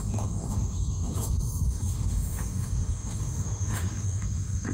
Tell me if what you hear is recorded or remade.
remade